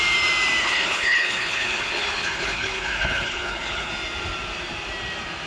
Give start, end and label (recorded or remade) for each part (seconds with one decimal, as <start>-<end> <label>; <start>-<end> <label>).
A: 0.0-0.6 recorded; 0.6-3.9 remade; 3.9-5.5 recorded